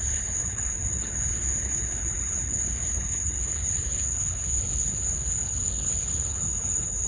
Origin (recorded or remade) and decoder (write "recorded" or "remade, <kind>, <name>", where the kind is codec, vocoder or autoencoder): remade, codec, HILCodec